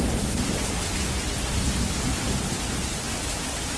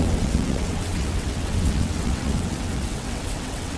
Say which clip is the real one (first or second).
first